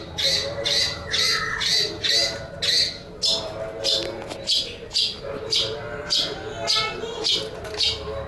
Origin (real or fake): real